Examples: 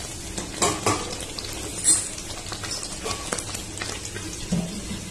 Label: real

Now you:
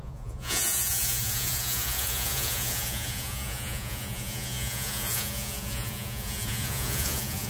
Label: fake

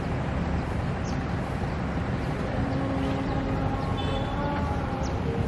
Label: real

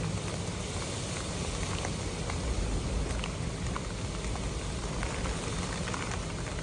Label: real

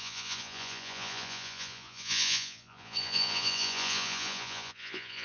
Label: fake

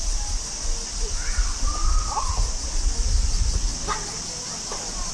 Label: real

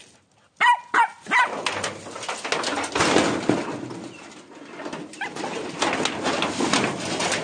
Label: real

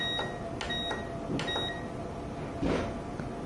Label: real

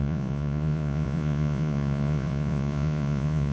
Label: fake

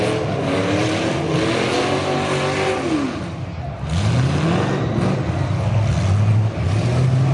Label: real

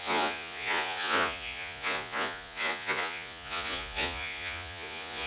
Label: fake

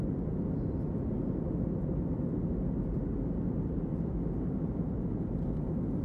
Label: real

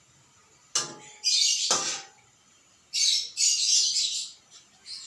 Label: real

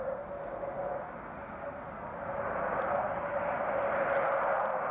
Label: real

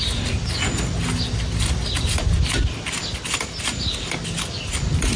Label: real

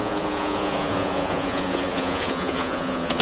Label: fake